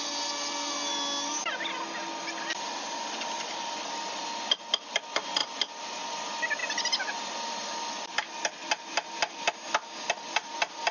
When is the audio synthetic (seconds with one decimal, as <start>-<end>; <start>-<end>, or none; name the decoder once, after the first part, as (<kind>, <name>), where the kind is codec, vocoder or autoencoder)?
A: none